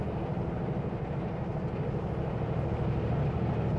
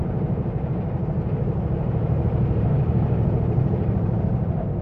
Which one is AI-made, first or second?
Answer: second